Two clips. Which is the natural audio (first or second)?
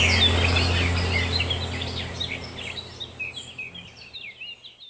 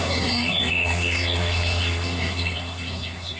first